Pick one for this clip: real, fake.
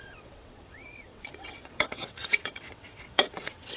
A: fake